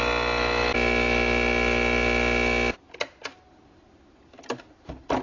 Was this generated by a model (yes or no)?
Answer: no